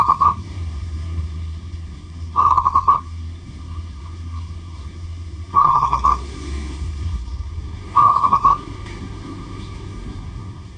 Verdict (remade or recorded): remade